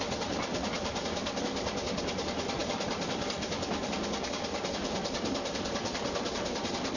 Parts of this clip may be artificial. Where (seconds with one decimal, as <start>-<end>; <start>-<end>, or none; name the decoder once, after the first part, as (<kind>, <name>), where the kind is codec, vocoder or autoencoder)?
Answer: 0.5-1.4 (vocoder, BigVGAN v2); 2.6-6.6